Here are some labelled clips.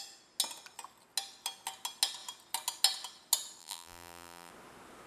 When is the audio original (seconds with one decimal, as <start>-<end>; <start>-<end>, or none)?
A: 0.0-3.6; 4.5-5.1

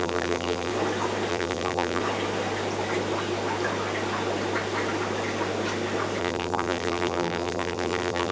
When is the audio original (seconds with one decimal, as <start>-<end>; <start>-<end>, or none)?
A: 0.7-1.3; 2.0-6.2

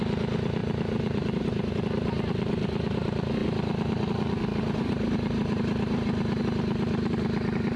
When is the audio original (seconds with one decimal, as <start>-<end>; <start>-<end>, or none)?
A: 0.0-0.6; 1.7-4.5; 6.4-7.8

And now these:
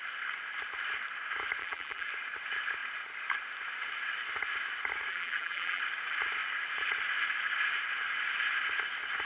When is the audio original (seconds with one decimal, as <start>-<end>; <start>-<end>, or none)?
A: 0.0-1.6; 2.1-5.1; 5.8-9.2